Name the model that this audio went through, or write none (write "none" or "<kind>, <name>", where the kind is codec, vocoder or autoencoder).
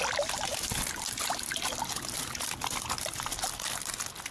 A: none